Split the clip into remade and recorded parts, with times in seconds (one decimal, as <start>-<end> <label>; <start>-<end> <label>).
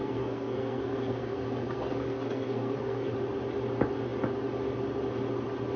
0.0-3.1 remade; 3.1-5.8 recorded